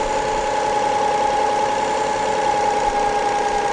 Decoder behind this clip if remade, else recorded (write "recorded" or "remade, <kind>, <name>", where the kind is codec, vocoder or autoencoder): recorded